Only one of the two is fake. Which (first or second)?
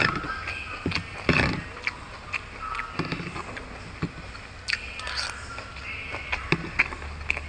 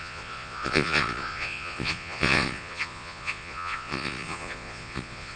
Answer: second